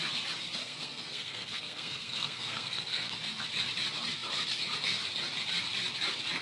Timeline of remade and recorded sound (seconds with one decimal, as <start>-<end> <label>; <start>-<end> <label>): 0.0-0.6 recorded; 0.6-3.1 remade; 3.1-6.4 recorded